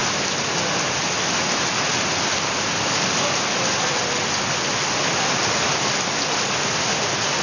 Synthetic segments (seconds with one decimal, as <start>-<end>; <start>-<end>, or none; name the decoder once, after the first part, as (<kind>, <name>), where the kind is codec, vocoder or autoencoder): none